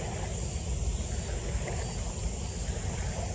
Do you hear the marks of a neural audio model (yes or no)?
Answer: no